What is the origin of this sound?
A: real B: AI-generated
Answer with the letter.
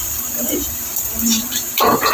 B